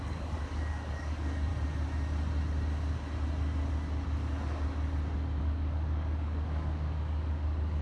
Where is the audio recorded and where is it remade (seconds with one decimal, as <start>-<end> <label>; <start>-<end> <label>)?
0.0-1.5 remade; 1.5-5.4 recorded; 5.4-7.8 remade